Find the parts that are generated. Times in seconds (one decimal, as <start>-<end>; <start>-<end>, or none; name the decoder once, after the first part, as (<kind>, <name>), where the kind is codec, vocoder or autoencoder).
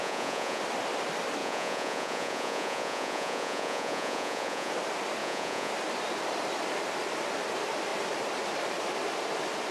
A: 0.0-0.6 (vocoder, Vocos); 1.4-4.7; 5.2-5.7